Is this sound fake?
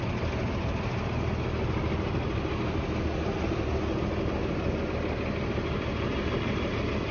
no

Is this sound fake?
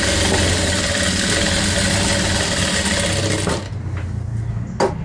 no